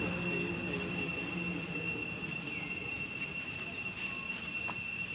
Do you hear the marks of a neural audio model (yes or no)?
no